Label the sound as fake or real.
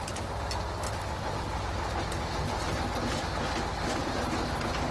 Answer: real